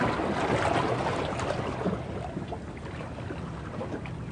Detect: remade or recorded recorded